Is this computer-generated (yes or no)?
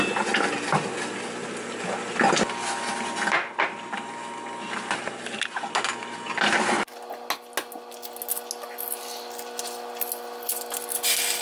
no